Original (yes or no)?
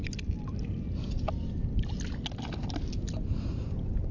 yes